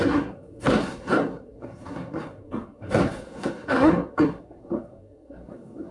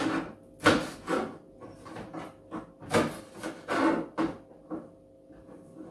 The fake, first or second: first